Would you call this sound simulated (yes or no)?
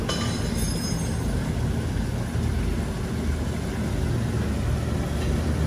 no